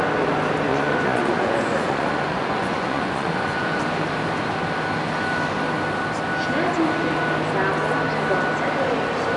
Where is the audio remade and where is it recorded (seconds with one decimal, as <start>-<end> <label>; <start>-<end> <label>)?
0.0-0.7 recorded; 0.7-3.8 remade; 3.8-9.4 recorded